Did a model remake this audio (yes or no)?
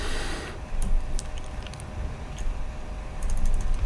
no